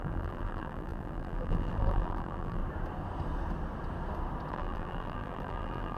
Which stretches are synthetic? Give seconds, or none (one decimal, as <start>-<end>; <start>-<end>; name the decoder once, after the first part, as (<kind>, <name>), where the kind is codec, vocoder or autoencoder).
0.0-2.6 (vocoder, BigVGAN v2); 4.5-6.0